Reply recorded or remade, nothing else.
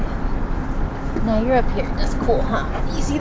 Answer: remade